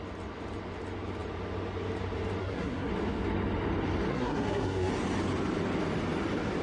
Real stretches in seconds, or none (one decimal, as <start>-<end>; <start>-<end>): 0.0-2.4; 2.9-4.1; 4.9-6.6